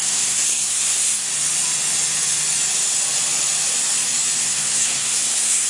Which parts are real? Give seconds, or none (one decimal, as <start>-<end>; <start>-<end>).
1.3-4.4